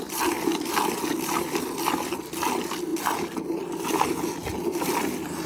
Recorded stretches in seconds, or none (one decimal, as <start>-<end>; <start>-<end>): 0.0-5.5